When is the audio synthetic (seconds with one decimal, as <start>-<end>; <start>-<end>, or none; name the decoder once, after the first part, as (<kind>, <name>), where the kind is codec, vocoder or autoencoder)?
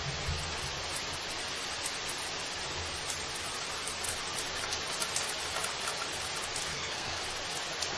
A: 6.7-7.2 (codec, SNAC)